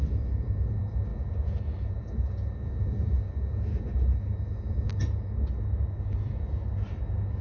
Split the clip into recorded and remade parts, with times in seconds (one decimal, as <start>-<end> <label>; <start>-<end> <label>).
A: 0.0-7.4 recorded